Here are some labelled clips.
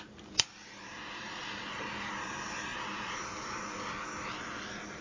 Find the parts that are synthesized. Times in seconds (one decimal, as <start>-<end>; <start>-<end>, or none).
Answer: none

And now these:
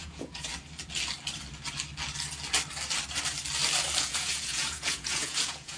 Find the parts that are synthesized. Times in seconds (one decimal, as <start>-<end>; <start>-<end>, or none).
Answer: 0.0-0.5; 4.0-5.8

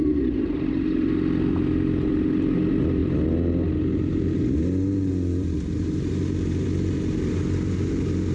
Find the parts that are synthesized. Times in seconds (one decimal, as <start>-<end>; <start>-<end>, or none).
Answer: none